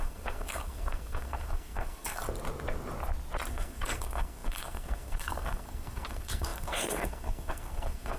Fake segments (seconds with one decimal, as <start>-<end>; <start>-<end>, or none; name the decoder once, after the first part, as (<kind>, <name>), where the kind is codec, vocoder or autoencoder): 0.0-2.2 (codec, SNAC); 3.5-8.2